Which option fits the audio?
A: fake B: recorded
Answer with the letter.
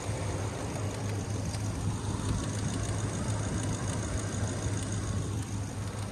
B